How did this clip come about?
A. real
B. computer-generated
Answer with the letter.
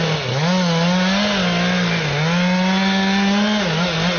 A